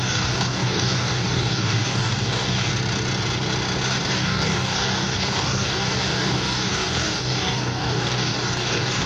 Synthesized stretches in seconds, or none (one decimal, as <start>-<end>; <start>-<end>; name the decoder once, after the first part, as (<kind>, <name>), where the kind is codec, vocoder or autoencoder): 0.0-2.7 (codec, DAC); 4.1-9.1